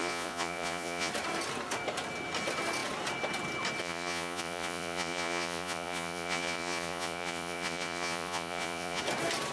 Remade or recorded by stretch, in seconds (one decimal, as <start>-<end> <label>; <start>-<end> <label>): 0.0-1.1 remade; 1.1-3.8 recorded; 3.8-9.0 remade; 9.0-9.5 recorded